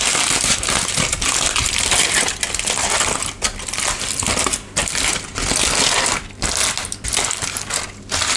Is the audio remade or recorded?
recorded